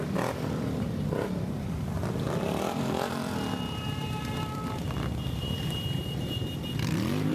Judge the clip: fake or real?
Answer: fake